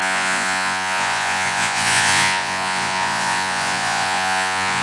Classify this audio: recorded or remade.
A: remade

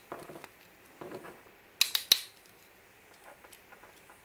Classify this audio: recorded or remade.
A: recorded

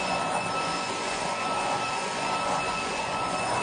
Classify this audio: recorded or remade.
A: remade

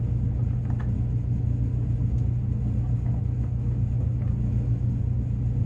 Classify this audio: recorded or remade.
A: recorded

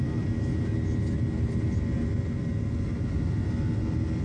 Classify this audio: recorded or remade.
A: recorded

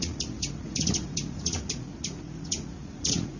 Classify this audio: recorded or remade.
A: remade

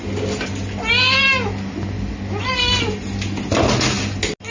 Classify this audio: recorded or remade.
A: recorded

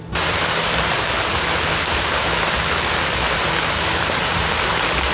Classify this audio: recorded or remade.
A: recorded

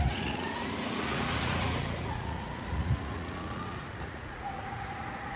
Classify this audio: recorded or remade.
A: remade